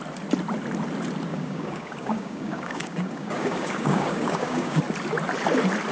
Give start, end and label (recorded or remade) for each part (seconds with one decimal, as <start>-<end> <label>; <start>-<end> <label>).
0.0-1.3 recorded; 1.3-4.8 remade; 4.8-5.9 recorded